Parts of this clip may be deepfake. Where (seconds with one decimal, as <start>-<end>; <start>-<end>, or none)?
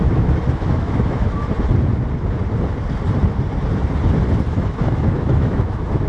0.0-1.5; 4.5-6.1